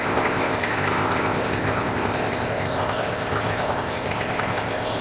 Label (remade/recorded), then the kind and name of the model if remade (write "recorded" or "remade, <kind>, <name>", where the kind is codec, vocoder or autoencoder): remade, codec, ZipCodec